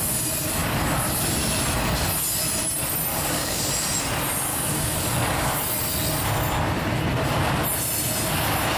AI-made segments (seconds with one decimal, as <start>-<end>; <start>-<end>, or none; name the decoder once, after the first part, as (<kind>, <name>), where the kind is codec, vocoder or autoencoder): 3.1-3.7 (codec, DAC); 4.5-5.5